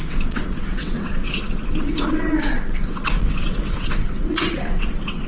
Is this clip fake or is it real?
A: fake